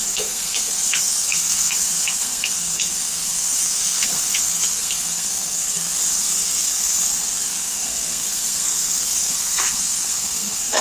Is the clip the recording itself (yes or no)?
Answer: no